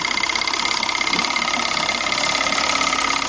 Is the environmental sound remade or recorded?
recorded